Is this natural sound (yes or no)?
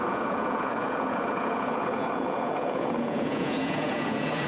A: no